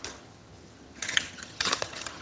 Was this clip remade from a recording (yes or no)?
yes